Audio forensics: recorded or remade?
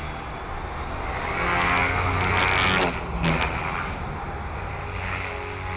recorded